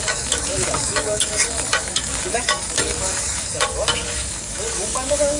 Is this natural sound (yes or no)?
no